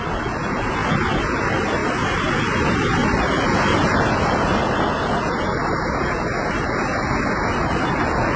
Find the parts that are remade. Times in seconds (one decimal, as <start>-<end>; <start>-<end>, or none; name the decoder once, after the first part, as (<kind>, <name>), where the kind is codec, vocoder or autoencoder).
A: none

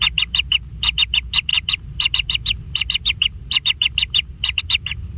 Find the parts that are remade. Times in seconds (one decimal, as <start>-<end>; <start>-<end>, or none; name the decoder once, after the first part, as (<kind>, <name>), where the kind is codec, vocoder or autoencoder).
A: none

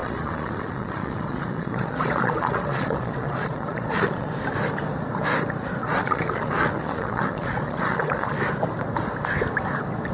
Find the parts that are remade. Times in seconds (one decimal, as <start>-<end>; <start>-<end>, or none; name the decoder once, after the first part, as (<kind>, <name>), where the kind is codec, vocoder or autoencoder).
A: 0.0-4.3 (vocoder, Vocos); 5.8-8.4

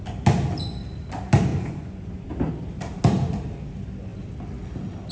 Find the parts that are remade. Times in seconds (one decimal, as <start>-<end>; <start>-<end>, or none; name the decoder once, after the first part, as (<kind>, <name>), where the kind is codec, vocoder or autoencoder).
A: 1.5-2.3 (vocoder, Vocos)